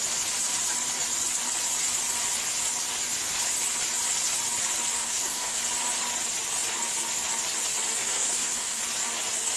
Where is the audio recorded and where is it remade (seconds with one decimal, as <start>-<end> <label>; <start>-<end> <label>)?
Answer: 0.0-5.0 recorded; 5.0-5.6 remade; 5.6-8.0 recorded; 8.0-8.8 remade; 8.8-9.6 recorded